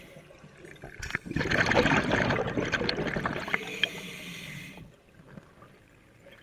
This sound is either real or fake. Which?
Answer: real